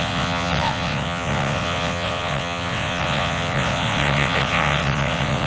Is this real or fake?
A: fake